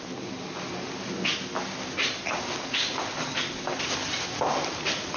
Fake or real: real